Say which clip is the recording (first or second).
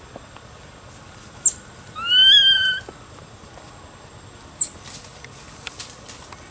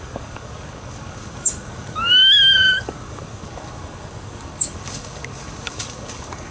first